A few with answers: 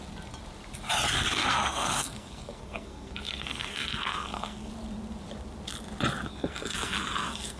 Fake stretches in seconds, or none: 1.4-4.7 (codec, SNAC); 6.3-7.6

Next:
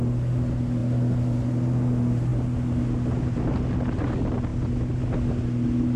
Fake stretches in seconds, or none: none

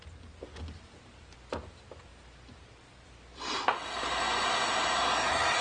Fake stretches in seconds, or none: 2.1-4.2 (vocoder, BigVGAN v2)

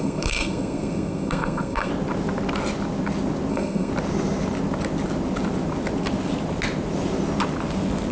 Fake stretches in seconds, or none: 0.0-1.9 (codec, SNAC); 3.5-3.9

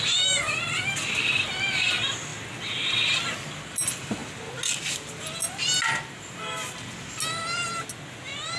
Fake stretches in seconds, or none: none

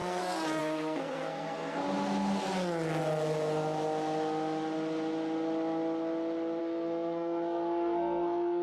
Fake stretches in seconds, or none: 0.0-1.8 (codec, SNAC); 6.6-8.6